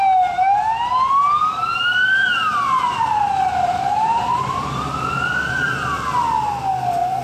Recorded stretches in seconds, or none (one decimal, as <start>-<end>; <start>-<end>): 0.0-1.2; 5.5-7.2